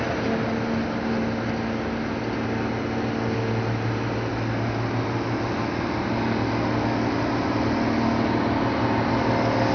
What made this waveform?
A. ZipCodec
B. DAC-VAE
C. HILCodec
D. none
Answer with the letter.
D